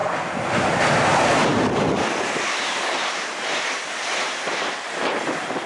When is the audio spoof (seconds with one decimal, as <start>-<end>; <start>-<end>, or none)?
0.0-0.8; 1.5-4.9